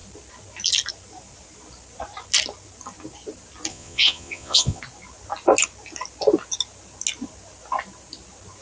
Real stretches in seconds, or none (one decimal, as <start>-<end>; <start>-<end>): 0.0-3.7; 4.8-8.6